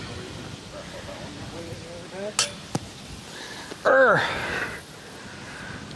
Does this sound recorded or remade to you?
recorded